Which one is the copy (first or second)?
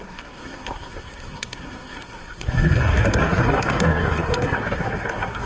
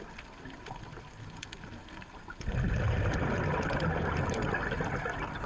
first